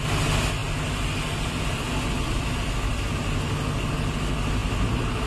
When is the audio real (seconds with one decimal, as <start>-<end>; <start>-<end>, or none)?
0.0-5.3